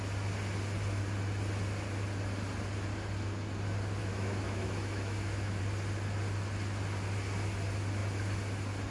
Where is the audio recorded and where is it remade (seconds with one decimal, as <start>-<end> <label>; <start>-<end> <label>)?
0.0-4.0 recorded; 4.0-5.6 remade; 5.6-8.9 recorded